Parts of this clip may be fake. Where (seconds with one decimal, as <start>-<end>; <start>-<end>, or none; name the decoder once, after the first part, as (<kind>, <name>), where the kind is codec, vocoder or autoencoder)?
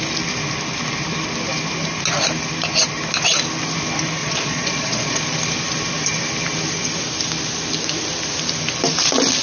4.2-5.2 (vocoder, Vocos)